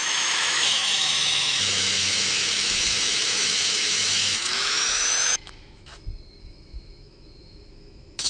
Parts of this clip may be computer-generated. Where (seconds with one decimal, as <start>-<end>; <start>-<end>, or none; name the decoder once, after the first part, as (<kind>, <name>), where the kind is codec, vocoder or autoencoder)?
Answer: 0.0-5.9 (autoencoder, DAC-VAE); 6.4-8.3